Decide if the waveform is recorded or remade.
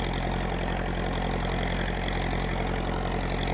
recorded